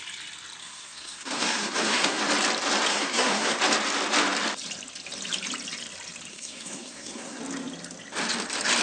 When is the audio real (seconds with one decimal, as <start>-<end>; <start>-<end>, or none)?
0.0-0.6; 2.2-2.9; 3.6-6.3; 7.4-8.8